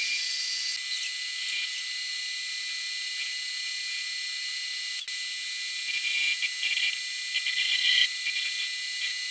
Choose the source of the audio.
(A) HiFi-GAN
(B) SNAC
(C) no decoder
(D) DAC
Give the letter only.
C